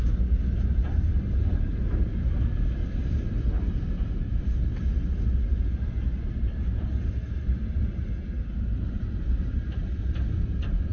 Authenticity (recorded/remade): recorded